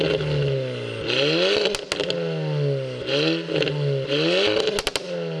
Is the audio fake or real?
real